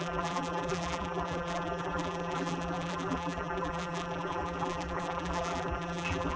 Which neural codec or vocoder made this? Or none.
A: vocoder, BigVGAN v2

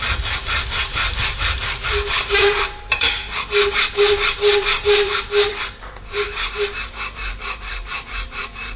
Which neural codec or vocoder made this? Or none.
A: vocoder, BigVGAN v2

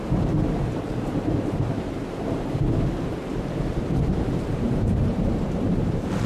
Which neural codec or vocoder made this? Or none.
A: vocoder, BigVGAN v2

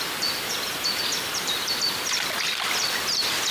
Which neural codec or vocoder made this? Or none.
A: vocoder, BigVGAN v2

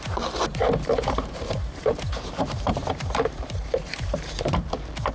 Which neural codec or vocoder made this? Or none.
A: vocoder, BigVGAN v2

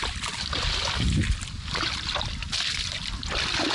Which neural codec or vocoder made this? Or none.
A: none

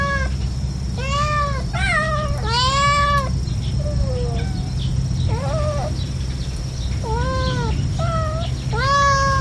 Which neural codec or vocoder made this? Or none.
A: none